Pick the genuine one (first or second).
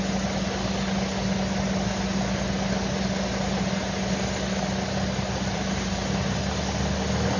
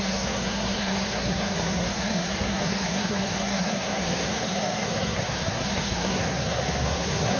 first